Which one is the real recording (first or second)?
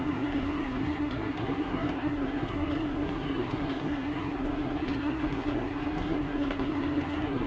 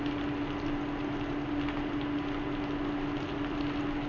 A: second